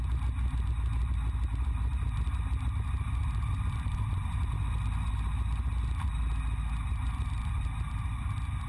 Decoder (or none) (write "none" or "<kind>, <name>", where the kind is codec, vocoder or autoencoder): none